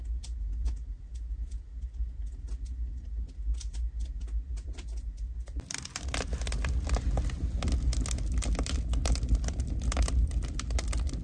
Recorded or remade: recorded